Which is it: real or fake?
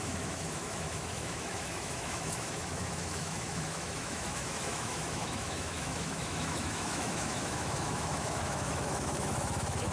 fake